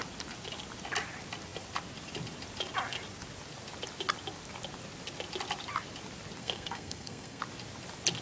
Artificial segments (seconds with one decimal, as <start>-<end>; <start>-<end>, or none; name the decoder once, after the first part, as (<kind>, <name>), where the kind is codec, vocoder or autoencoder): 6.4-7.4 (codec, SNAC)